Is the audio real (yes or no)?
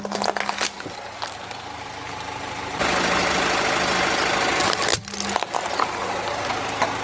yes